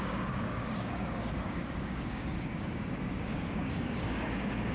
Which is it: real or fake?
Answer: fake